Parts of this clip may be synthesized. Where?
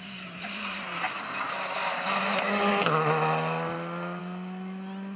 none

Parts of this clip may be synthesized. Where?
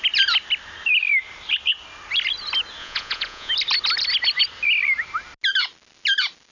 2.8-3.5 (vocoder, Vocos)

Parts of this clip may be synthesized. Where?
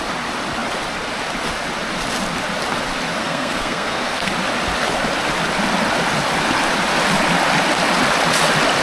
3.2-4.3 (codec, SNAC)